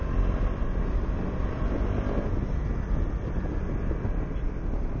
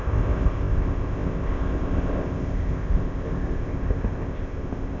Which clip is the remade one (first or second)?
second